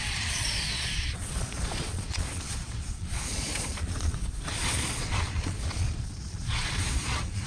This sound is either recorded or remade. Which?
remade